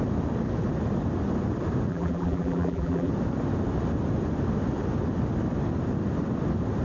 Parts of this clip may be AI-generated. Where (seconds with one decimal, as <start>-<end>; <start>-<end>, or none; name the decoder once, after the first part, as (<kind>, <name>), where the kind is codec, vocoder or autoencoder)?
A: 1.9-3.1 (vocoder, BigVGAN v2)